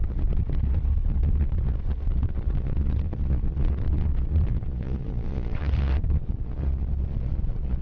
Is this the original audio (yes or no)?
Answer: no